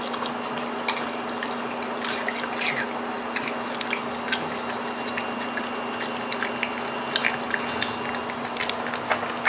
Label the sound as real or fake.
real